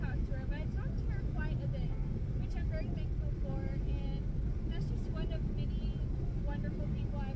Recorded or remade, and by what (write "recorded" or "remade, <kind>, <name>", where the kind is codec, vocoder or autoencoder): recorded